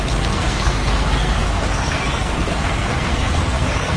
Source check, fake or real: fake